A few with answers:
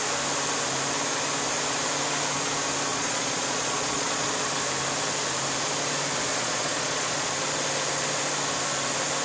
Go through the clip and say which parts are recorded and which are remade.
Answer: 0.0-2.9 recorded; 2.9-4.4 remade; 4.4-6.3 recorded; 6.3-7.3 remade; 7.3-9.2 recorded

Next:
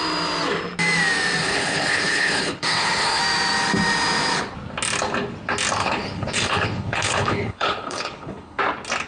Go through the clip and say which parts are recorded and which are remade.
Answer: 0.0-1.4 recorded; 1.4-3.2 remade; 3.2-5.8 recorded; 5.8-8.6 remade; 8.6-9.1 recorded

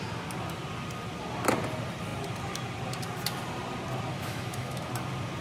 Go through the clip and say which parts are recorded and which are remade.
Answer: 0.0-4.1 recorded; 4.1-4.9 remade; 4.9-5.4 recorded

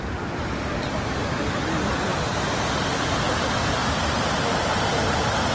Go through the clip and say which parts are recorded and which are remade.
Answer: 0.0-5.5 recorded

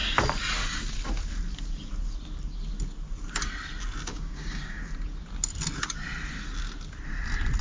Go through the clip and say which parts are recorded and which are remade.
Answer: 0.0-4.1 recorded; 4.1-4.9 remade; 4.9-7.6 recorded

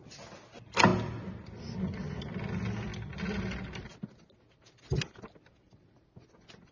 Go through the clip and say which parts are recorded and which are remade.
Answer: 0.0-6.7 recorded

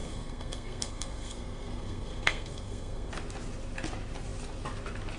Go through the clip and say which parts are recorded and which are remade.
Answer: 0.0-3.1 remade; 3.1-5.2 recorded